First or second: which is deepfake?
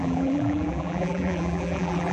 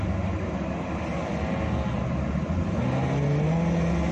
first